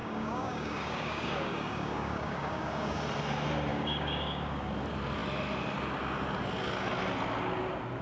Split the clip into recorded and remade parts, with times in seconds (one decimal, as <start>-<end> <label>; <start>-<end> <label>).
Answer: 0.0-3.0 remade; 3.0-3.7 recorded; 3.7-4.7 remade; 4.7-8.0 recorded